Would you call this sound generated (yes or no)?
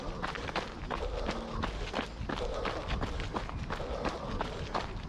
no